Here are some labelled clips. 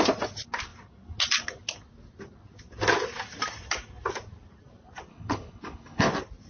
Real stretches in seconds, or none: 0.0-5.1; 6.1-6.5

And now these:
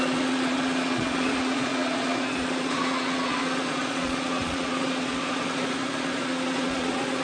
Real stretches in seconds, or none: none

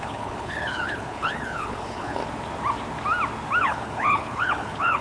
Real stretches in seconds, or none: 2.2-3.6